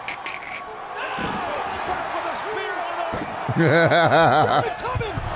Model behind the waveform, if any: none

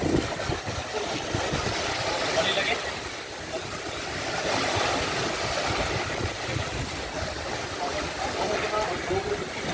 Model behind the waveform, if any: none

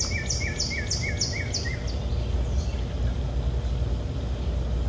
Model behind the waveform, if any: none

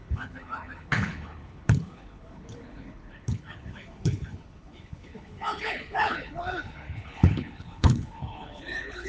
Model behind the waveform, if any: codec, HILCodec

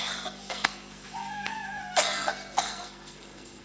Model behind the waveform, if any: codec, SNAC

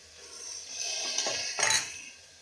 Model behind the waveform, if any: none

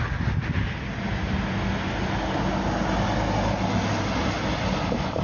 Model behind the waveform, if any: none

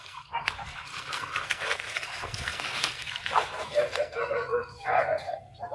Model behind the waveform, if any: codec, SNAC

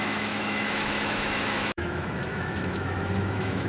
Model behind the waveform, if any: autoencoder, DAC-VAE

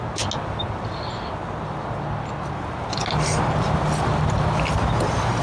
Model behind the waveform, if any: none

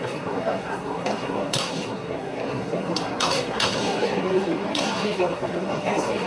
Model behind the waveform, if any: codec, SNAC